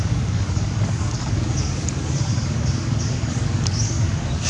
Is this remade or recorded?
remade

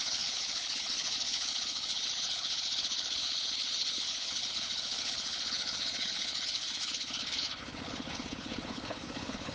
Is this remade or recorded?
remade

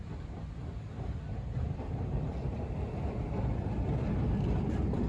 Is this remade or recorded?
recorded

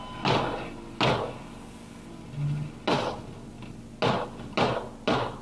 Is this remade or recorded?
recorded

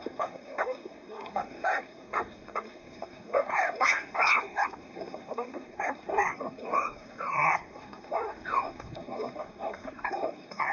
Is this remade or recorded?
remade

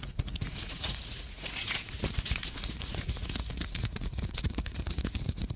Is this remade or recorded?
remade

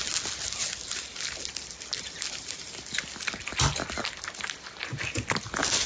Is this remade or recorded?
recorded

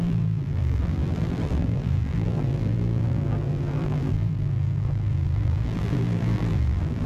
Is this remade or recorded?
remade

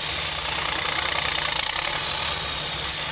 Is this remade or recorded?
recorded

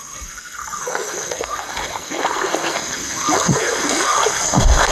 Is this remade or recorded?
remade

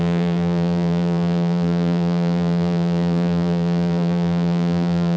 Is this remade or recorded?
remade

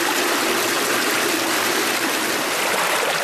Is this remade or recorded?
recorded